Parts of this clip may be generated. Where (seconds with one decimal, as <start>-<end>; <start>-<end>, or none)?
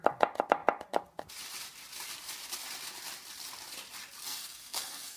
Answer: 4.2-5.2